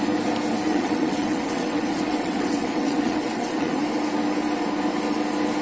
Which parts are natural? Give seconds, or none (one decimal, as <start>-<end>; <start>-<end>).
0.0-0.7; 3.8-5.6